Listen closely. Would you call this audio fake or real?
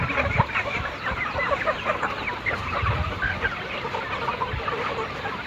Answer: real